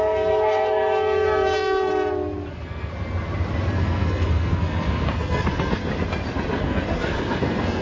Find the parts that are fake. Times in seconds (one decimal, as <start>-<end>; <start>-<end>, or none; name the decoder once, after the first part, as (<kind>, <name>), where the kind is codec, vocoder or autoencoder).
0.0-1.9 (codec, SNAC); 2.5-2.9; 3.7-5.8; 6.6-7.8